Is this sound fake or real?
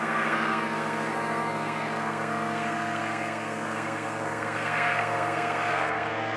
fake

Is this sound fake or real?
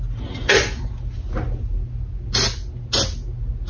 real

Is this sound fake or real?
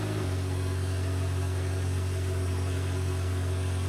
fake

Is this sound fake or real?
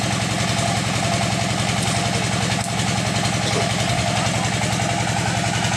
real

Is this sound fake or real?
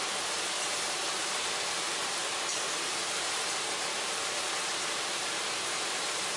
fake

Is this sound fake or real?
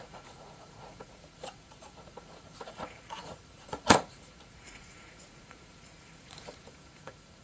fake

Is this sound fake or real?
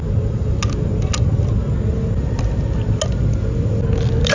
real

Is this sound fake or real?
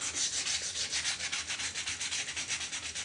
real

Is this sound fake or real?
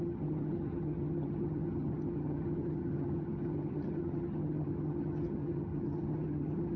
fake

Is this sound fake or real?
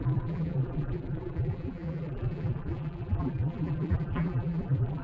fake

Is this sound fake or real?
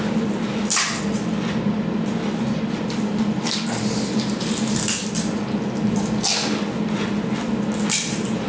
real